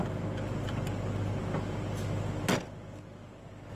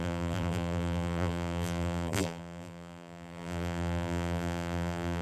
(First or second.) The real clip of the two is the first